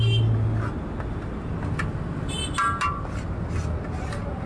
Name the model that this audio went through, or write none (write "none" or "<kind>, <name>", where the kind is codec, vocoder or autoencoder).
none